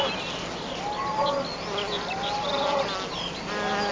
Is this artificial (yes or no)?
no